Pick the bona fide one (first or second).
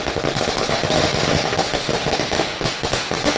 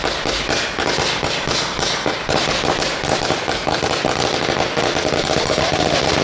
second